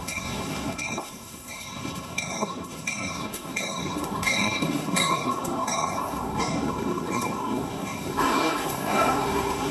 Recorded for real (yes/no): no